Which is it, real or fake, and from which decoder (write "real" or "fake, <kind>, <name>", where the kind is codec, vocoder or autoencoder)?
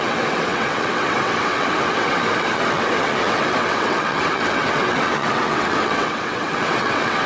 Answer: fake, vocoder, WaveNeXt